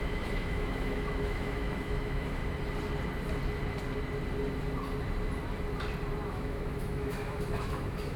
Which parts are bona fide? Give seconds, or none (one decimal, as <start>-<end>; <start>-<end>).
2.4-6.3